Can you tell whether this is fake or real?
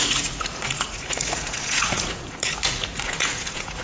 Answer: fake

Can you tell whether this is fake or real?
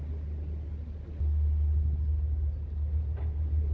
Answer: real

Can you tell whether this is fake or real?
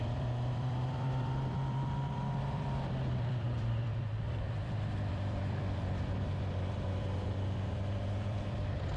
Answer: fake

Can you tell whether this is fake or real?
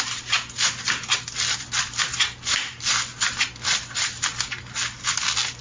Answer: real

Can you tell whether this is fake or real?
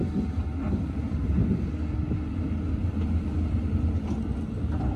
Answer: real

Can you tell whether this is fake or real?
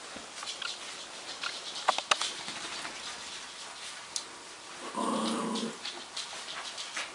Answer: real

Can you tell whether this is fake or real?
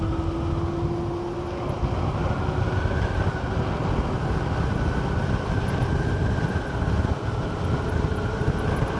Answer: real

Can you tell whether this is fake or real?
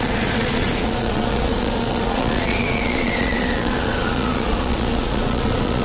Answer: fake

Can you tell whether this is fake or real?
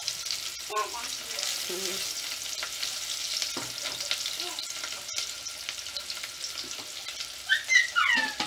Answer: real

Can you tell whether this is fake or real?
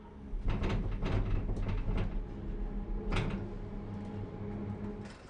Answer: real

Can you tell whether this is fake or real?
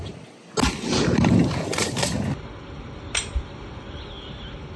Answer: real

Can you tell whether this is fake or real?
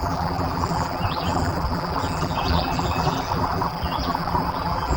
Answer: fake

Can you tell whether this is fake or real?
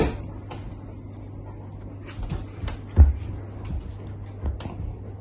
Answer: real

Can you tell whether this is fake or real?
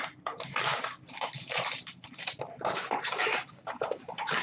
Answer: fake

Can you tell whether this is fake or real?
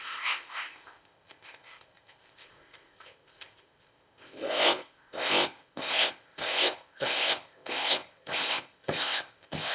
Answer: fake